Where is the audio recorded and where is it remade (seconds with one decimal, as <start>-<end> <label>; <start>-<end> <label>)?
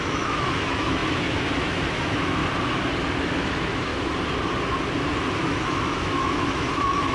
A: 0.0-2.4 remade; 2.4-3.2 recorded; 3.2-3.9 remade; 3.9-5.3 recorded; 5.3-7.1 remade